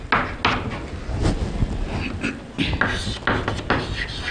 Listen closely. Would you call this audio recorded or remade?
recorded